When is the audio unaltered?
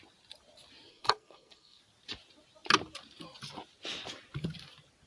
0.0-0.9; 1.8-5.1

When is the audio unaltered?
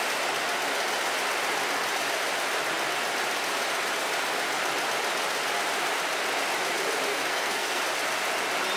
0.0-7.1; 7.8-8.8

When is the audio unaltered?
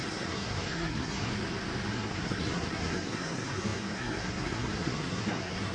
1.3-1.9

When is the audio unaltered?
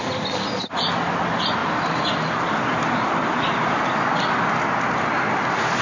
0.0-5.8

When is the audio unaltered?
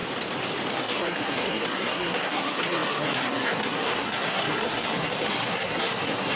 0.0-0.7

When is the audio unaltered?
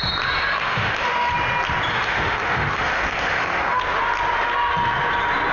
0.0-0.5; 1.3-1.9; 3.8-5.5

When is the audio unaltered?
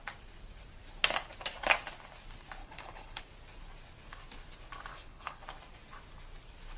0.0-2.6; 3.2-4.9; 5.4-6.8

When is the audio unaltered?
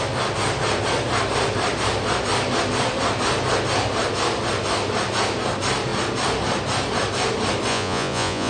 0.0-7.7